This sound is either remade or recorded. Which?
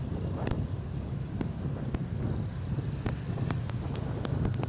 recorded